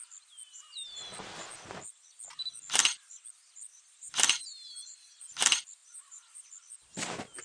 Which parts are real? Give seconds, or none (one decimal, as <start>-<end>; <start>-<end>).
0.0-0.5; 1.0-3.7; 5.3-5.8; 6.5-7.4